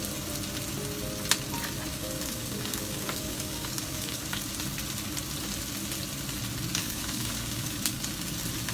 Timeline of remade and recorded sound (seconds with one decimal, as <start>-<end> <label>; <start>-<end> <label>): 0.0-1.9 recorded; 1.9-4.4 remade; 4.4-6.8 recorded; 6.8-8.0 remade; 8.0-8.7 recorded